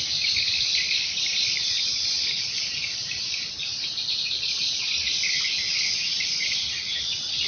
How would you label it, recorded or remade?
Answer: recorded